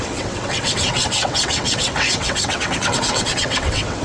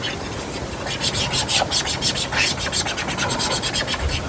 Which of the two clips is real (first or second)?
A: second